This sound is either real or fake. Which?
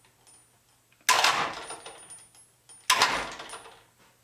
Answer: real